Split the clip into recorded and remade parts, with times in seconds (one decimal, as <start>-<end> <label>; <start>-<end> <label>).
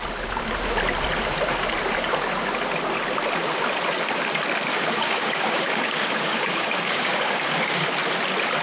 0.0-4.7 recorded; 4.7-7.9 remade; 7.9-8.6 recorded